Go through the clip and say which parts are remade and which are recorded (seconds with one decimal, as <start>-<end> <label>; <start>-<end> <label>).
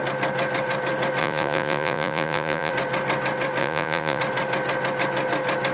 0.0-1.2 recorded; 1.2-2.7 remade; 2.7-3.6 recorded; 3.6-4.2 remade; 4.2-5.7 recorded